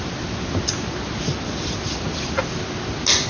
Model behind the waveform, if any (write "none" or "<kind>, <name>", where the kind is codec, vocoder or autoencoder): none